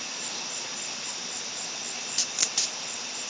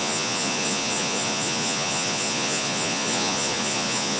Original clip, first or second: first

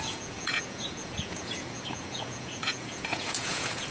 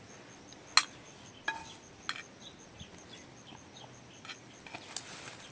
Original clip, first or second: second